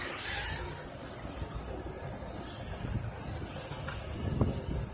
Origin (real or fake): real